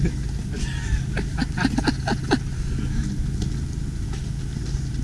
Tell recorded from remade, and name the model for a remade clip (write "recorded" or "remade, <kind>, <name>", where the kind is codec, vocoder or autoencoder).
recorded